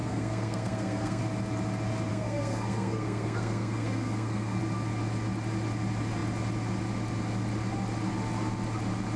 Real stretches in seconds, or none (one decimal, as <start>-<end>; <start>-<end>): 1.2-2.1; 4.6-9.2